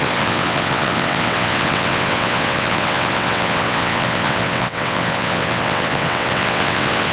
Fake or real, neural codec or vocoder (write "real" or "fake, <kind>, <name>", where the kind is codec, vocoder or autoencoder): fake, vocoder, WaveNeXt